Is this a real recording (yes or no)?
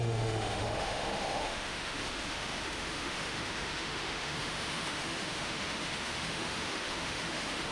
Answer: no